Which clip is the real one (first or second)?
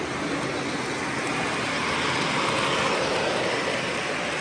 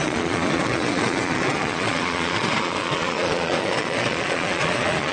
first